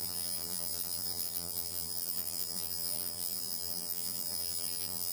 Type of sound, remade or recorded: remade